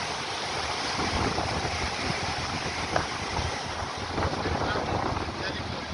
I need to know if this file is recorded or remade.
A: recorded